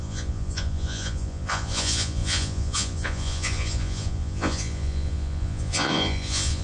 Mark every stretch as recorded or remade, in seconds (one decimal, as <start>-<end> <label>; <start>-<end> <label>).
0.0-6.6 remade